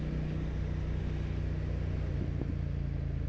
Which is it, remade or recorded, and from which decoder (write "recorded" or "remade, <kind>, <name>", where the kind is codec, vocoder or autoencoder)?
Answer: recorded